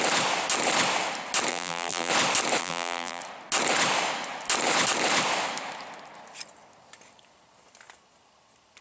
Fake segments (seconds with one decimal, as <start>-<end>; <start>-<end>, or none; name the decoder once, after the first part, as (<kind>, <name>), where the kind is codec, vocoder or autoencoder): 1.5-2.1 (vocoder, BigVGAN v2); 2.6-3.2